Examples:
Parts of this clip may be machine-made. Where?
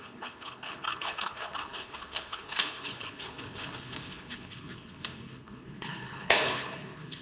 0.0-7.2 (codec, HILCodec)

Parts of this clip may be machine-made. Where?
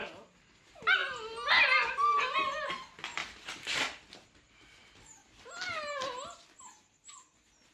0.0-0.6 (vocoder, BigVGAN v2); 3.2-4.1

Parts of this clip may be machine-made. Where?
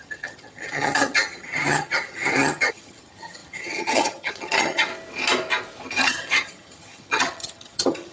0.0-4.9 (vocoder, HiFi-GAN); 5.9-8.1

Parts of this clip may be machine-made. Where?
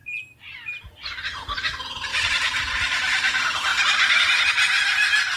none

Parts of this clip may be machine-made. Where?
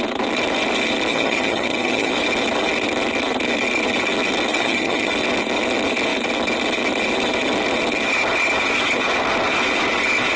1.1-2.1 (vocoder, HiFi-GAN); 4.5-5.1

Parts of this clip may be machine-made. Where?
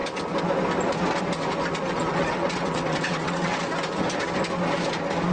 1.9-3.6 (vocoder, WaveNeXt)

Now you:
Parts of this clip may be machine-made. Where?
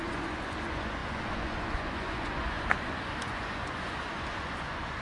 0.0-5.0 (vocoder, Vocos)